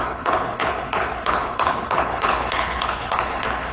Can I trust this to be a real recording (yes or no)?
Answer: no